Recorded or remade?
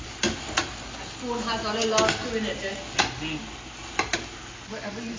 recorded